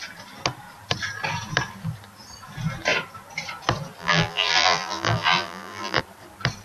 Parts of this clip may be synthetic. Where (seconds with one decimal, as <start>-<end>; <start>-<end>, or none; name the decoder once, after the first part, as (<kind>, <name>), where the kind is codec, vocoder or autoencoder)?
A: 4.0-6.0 (vocoder, BigVGAN v2)